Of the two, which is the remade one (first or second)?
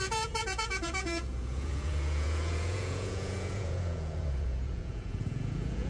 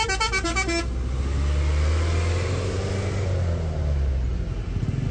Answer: first